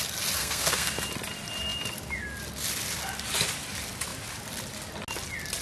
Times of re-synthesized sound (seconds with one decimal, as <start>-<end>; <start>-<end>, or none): 0.4-0.9